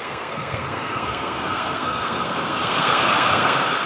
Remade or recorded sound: remade